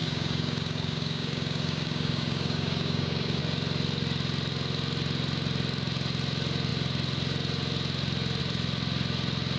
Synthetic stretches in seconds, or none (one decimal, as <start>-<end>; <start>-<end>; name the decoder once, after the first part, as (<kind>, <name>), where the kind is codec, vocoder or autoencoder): 0.0-3.4 (codec, DAC)